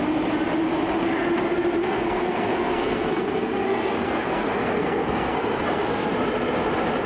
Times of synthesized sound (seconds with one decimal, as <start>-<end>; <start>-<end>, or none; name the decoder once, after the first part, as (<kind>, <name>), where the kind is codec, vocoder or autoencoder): 1.8-6.1 (codec, SNAC)

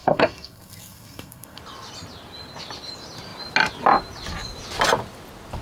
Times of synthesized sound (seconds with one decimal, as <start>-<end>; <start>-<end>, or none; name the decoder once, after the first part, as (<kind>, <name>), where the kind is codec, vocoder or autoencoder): 0.0-1.6 (codec, SNAC)

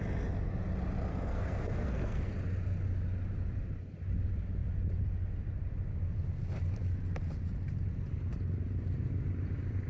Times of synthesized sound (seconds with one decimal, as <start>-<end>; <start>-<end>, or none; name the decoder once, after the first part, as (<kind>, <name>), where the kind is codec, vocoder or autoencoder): 1.1-2.3 (codec, SNAC)

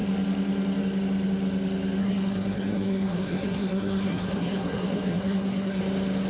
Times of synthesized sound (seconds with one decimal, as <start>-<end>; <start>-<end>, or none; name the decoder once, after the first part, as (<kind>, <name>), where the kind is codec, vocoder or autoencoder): 2.0-5.8 (codec, SNAC)

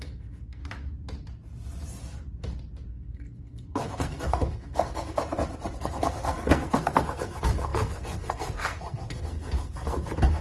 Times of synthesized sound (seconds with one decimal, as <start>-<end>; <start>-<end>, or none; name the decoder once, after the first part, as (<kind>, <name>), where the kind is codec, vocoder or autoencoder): 0.0-0.6 (codec, SNAC); 2.9-5.2; 5.8-10.4

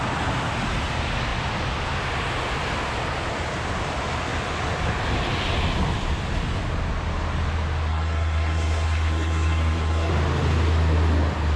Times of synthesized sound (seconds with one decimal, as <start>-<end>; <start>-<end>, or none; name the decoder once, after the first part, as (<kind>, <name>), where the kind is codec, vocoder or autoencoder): 7.9-10.1 (codec, SNAC)

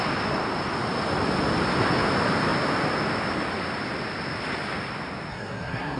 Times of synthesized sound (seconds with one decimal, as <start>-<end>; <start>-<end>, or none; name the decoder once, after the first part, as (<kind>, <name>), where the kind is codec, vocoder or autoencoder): 5.3-6.0 (codec, SNAC)